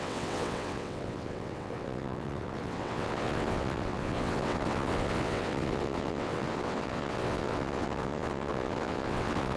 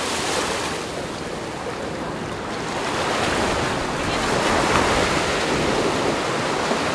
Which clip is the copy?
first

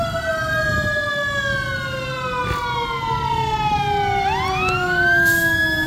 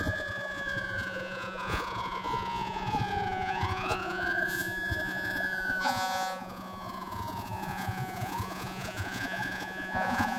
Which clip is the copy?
second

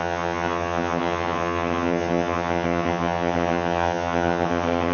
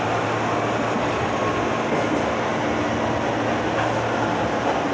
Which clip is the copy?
first